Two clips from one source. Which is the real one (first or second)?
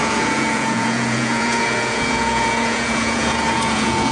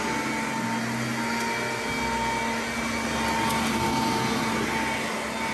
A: second